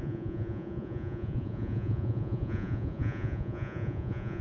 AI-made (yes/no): yes